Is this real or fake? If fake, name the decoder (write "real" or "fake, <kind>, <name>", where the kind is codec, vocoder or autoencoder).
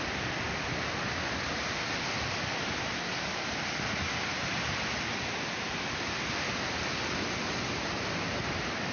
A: real